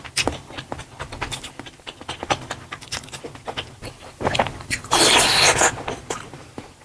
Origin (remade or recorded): recorded